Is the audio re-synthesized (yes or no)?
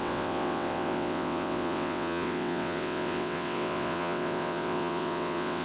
yes